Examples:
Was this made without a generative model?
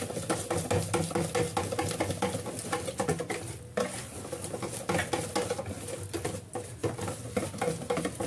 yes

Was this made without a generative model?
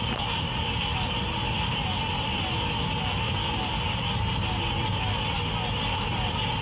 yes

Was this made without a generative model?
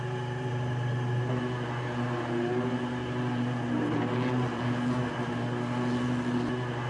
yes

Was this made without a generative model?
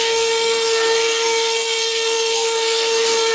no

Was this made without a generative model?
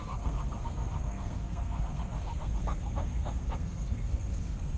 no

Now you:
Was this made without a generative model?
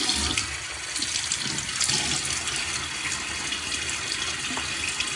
yes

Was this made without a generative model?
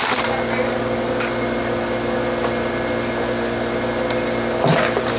yes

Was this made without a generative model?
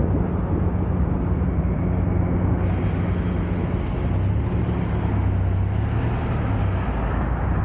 yes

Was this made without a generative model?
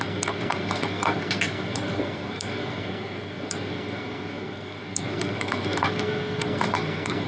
no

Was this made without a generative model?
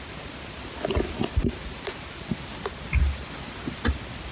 yes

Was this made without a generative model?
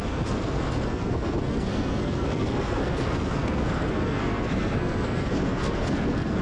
no